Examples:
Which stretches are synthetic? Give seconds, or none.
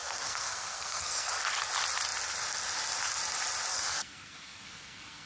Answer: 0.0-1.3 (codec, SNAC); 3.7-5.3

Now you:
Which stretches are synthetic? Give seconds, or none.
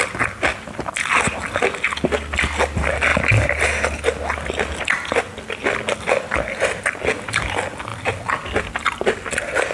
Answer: none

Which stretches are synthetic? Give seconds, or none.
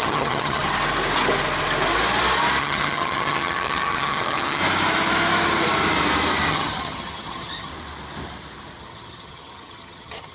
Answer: 0.0-0.6 (vocoder, HiFi-GAN); 2.6-4.6; 6.5-7.7; 8.8-10.3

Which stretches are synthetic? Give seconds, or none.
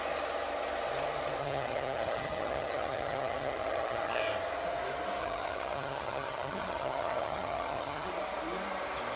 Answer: 1.4-4.2 (vocoder, HiFi-GAN); 5.2-8.1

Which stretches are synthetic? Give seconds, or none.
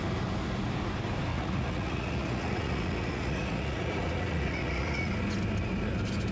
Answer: 1.3-5.1 (vocoder, Vocos)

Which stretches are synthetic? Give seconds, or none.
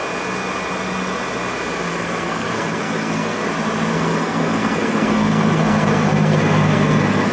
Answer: 1.9-3.4 (codec, SNAC); 3.9-7.3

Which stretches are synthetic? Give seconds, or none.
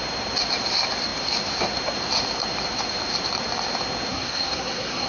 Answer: 4.1-5.1 (codec, SNAC)